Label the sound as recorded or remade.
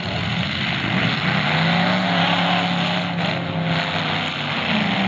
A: recorded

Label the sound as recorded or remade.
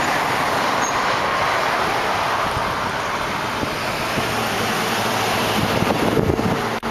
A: recorded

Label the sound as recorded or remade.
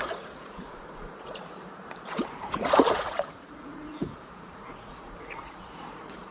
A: remade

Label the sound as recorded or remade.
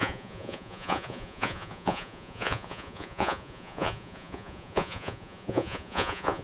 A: remade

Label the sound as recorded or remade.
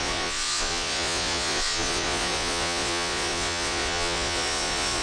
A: remade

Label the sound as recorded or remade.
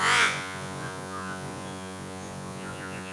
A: remade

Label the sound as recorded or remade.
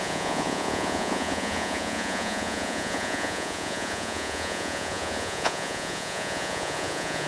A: remade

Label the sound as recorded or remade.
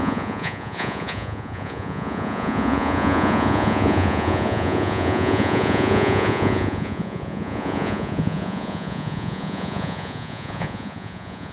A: remade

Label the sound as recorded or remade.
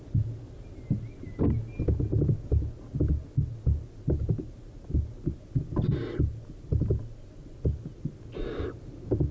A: recorded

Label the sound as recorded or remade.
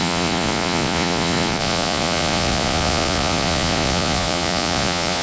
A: remade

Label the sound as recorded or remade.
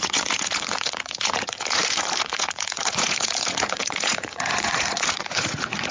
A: remade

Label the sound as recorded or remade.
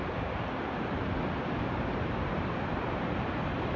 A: recorded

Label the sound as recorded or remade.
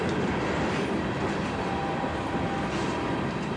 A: recorded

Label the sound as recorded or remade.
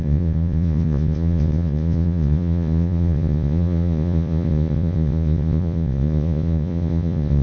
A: remade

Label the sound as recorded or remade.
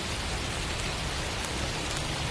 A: recorded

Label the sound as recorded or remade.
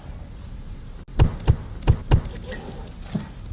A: recorded